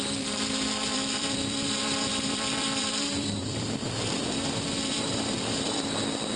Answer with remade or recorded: remade